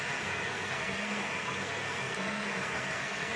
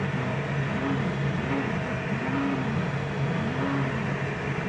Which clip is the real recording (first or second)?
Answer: second